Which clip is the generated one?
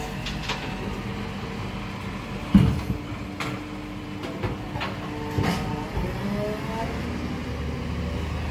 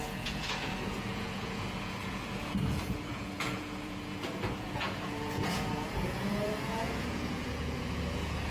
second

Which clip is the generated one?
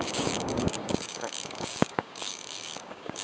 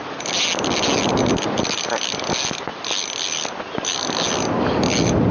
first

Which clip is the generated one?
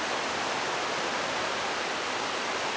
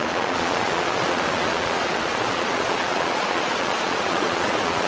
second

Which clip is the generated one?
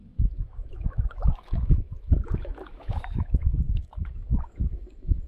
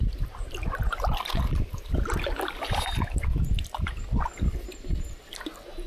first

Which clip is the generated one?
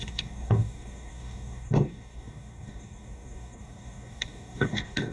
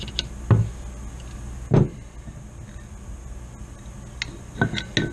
first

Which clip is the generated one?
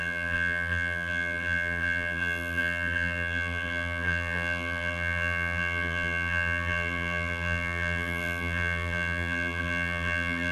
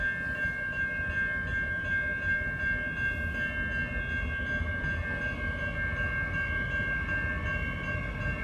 first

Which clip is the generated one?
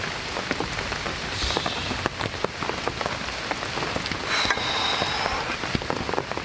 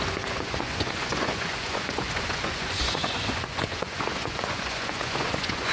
second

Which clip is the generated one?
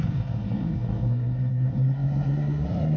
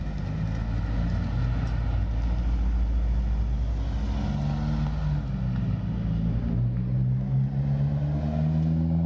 first